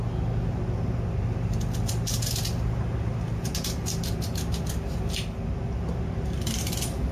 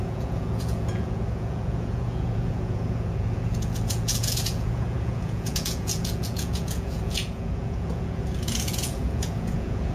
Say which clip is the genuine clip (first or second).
first